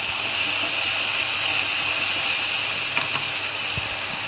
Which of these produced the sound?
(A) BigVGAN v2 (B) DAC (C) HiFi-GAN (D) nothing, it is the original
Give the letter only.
D